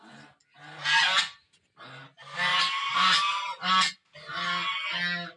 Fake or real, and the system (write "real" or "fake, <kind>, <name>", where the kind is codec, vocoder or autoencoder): real